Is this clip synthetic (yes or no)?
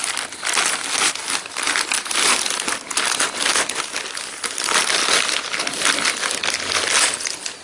no